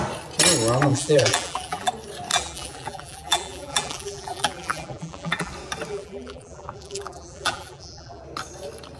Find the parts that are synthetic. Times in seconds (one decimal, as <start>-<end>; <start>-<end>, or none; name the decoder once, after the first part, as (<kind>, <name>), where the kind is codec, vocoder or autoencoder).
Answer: 0.9-1.9 (vocoder, BigVGAN v2); 2.3-5.5; 5.9-8.2